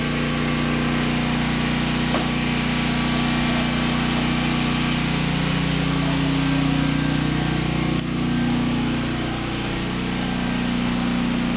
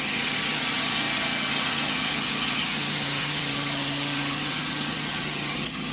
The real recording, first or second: first